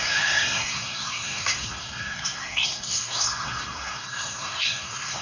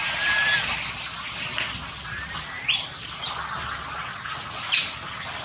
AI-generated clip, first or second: first